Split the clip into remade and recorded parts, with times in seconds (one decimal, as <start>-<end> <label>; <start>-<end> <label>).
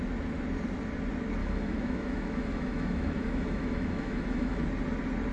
0.0-1.4 recorded; 1.4-4.6 remade; 4.6-5.3 recorded